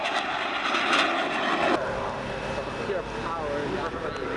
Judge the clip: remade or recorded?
recorded